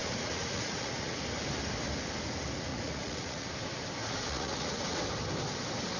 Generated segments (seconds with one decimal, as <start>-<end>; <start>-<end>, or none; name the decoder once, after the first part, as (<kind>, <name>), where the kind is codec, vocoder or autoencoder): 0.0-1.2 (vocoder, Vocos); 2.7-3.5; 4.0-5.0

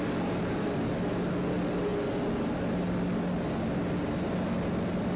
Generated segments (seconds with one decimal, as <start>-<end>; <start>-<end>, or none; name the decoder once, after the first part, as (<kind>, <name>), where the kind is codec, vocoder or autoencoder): none

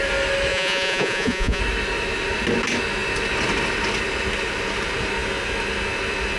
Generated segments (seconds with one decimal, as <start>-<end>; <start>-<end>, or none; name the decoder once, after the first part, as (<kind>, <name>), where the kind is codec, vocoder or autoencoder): 0.5-1.6 (vocoder, Vocos)